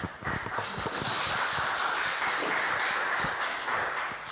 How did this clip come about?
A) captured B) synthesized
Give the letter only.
A